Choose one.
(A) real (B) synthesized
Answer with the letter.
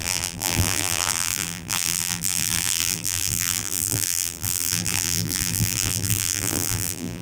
B